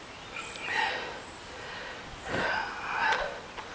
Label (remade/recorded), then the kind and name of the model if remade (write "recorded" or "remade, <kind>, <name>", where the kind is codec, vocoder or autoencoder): recorded